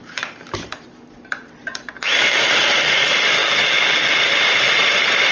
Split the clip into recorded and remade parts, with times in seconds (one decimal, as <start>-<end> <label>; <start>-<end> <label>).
0.0-3.4 remade; 3.4-4.2 recorded; 4.2-5.3 remade